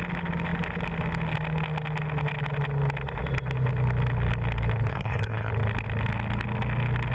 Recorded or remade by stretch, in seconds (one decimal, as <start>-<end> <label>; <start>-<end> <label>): 0.0-4.9 recorded; 4.9-5.5 remade; 5.5-7.1 recorded